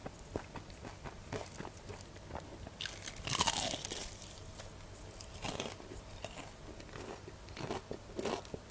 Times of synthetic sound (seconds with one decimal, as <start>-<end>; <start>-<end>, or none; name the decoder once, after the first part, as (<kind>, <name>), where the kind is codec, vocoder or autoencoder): none